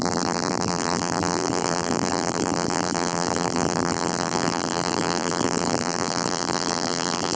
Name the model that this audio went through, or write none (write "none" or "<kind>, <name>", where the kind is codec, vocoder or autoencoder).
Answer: vocoder, BigVGAN v2